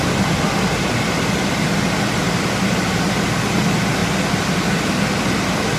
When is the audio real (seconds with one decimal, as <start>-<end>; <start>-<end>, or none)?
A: 0.0-5.8